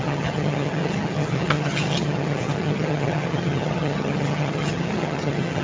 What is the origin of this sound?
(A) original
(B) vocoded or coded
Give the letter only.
B